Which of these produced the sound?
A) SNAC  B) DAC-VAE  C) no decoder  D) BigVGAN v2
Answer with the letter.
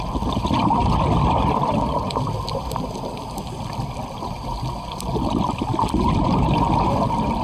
C